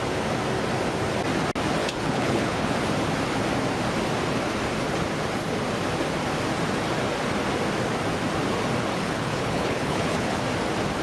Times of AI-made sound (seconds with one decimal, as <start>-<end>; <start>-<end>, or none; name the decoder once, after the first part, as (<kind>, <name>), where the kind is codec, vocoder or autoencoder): 1.8-2.7 (codec, HILCodec); 8.9-10.4